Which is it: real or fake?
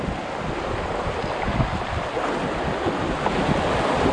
real